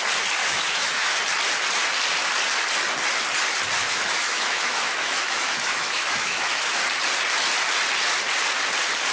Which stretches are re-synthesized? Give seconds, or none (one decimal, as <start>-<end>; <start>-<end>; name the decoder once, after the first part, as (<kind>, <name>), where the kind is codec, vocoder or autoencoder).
0.4-1.2 (autoencoder, DAC-VAE); 3.8-6.8